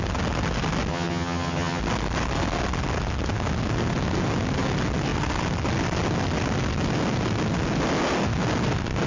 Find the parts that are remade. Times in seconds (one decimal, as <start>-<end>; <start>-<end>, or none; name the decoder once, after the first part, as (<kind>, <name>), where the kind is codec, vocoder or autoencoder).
0.9-1.8 (vocoder, HiFi-GAN)